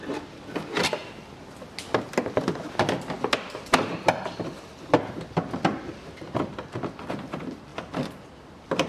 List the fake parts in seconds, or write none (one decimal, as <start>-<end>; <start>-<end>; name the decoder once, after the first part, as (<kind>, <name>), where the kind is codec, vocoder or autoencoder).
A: 0.0-1.0 (vocoder, BigVGAN v2); 3.7-7.7; 8.3-8.9